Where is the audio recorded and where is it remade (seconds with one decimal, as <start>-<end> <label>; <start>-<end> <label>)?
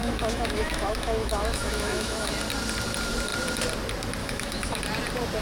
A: 0.0-2.3 remade; 2.3-4.2 recorded; 4.2-4.8 remade; 4.8-5.4 recorded